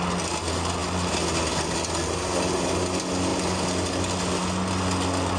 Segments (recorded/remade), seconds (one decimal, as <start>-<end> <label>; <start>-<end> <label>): 0.0-5.4 recorded